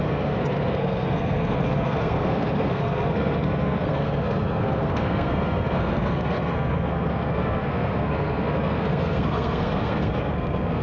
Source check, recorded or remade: remade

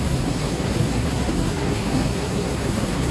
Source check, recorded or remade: remade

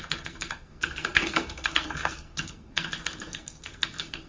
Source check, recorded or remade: remade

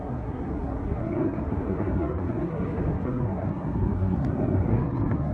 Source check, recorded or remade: remade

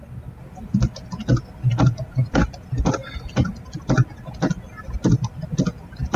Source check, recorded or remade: recorded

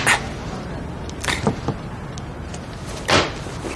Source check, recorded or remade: recorded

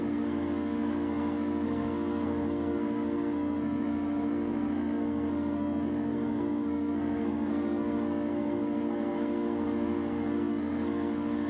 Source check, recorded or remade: remade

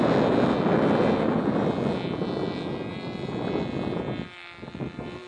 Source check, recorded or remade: recorded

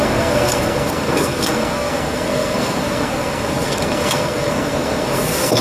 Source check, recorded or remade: remade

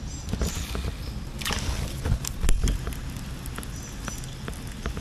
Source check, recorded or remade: recorded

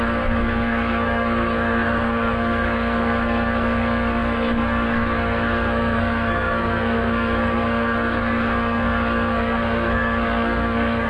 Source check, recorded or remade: remade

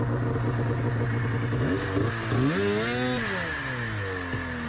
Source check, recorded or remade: recorded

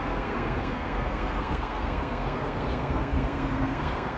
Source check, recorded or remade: remade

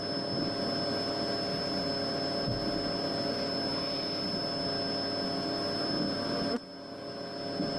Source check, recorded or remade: recorded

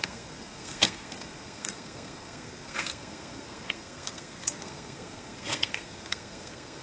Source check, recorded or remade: remade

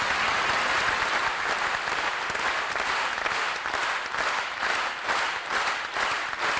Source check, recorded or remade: recorded